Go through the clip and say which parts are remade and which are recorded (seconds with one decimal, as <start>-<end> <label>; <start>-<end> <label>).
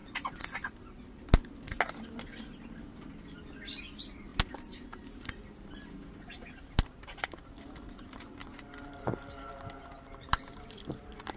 0.0-4.3 remade; 4.3-6.6 recorded; 6.6-8.4 remade; 8.4-9.5 recorded; 9.5-11.4 remade